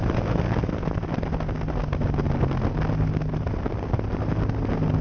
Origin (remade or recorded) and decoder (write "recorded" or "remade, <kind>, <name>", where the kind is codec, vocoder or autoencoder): recorded